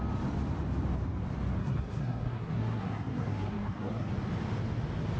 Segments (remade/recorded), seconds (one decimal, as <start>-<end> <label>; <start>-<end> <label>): 0.0-1.6 recorded; 1.6-4.1 remade; 4.1-5.2 recorded